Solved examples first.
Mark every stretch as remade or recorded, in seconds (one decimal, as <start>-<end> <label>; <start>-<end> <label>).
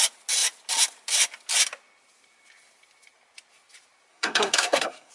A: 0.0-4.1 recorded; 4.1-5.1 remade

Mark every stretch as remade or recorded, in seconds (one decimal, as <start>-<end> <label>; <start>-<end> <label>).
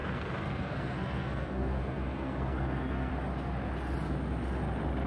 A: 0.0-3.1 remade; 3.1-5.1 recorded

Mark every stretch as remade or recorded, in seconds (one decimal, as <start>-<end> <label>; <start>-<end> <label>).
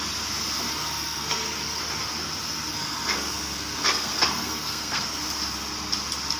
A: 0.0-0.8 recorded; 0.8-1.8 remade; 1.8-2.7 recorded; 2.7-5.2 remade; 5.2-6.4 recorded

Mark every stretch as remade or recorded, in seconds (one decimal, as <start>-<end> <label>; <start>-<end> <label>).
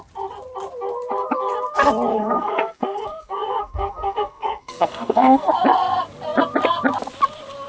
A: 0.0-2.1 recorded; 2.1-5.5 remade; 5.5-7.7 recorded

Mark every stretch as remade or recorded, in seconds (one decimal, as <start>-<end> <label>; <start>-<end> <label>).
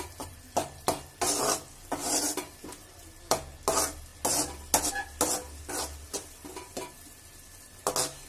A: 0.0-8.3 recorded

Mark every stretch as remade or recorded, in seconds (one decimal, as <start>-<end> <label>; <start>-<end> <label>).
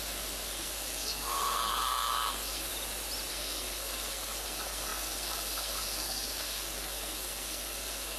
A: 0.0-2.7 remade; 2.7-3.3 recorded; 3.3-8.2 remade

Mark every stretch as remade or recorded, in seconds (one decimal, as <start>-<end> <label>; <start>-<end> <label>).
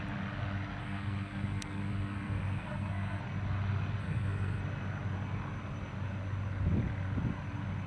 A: 0.0-0.8 recorded; 0.8-3.2 remade; 3.2-4.0 recorded; 4.0-4.6 remade; 4.6-7.9 recorded